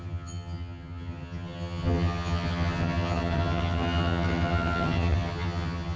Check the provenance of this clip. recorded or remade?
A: remade